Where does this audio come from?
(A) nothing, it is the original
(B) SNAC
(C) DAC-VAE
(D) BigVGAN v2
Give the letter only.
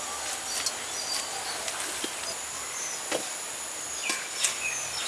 A